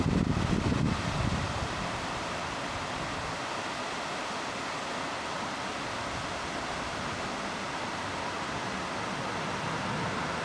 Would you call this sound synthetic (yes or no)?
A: no